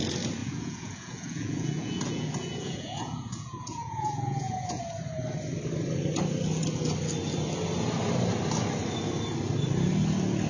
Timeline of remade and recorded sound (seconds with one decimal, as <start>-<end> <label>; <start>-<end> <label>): 0.0-0.4 recorded; 0.4-4.8 remade; 4.8-10.5 recorded